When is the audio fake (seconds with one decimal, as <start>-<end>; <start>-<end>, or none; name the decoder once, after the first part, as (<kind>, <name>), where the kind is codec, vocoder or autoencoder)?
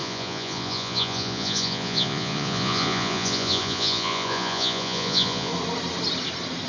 0.0-5.5 (vocoder, Vocos)